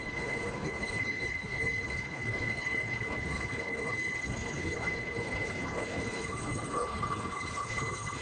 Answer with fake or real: fake